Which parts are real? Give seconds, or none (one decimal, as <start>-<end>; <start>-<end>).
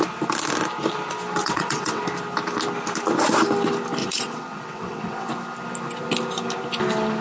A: 0.0-1.4; 2.0-4.0; 5.3-7.2